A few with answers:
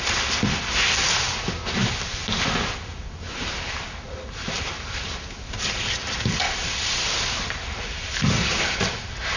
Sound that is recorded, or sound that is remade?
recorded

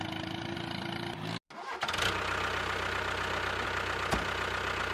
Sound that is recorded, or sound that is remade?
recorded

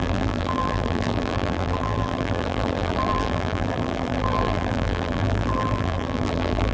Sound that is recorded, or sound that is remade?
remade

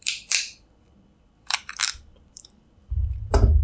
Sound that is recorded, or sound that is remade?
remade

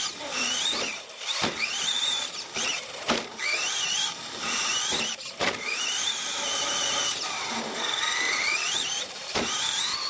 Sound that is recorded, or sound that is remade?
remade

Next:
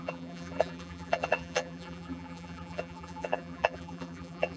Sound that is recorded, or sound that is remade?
remade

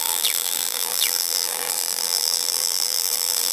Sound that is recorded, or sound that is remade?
remade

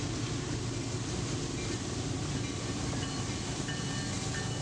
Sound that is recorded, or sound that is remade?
recorded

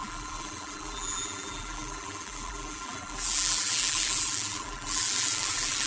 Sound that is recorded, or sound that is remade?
remade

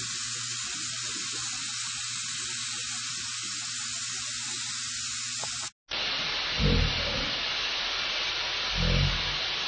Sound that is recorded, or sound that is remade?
recorded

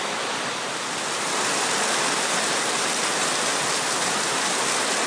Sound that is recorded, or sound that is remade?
recorded